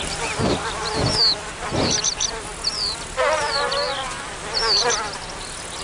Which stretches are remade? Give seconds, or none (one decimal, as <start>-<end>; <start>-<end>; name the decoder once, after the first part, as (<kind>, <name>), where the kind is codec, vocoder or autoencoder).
none